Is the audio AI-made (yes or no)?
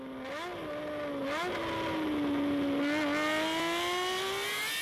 no